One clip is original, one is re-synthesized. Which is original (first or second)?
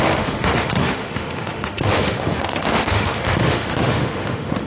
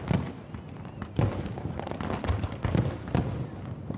second